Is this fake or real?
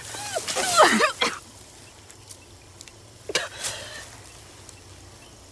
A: real